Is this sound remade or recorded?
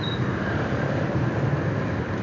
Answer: recorded